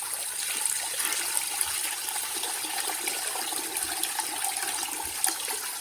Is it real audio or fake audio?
real